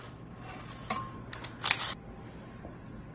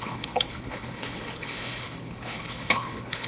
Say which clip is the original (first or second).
first